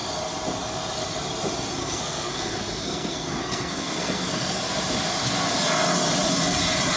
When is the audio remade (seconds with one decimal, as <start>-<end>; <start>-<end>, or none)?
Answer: 1.8-4.6